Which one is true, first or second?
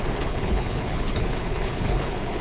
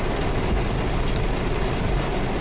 second